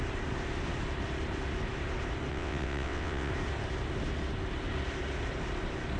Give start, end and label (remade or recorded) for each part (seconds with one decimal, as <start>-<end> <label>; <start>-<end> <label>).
0.0-2.3 recorded; 2.3-3.3 remade; 3.3-6.0 recorded

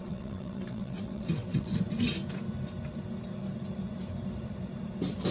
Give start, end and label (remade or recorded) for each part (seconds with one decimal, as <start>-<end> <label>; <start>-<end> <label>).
0.0-1.7 remade; 1.7-5.3 recorded

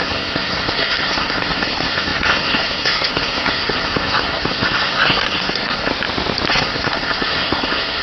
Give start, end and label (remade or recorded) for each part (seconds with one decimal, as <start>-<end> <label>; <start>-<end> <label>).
0.0-5.9 remade; 5.9-6.5 recorded; 6.5-8.0 remade

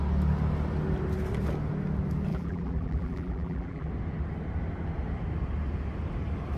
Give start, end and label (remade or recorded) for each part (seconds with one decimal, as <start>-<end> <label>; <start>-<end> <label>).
0.0-2.3 recorded; 2.3-3.9 remade; 3.9-6.6 recorded

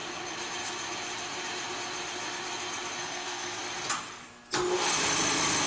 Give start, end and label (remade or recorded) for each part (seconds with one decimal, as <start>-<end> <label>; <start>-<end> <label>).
0.0-3.0 recorded; 3.0-3.6 remade; 3.6-5.7 recorded